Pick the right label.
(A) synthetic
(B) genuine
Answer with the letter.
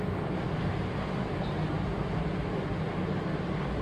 B